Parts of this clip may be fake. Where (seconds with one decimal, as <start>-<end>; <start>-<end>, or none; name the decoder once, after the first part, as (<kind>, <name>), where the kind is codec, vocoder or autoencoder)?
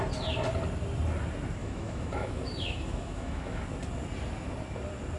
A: 1.6-3.6 (autoencoder, DAC-VAE)